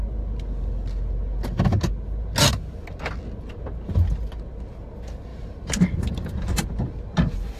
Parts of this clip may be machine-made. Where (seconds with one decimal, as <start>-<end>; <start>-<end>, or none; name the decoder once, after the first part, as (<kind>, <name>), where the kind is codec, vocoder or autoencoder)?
5.3-6.7 (vocoder, BigVGAN v2)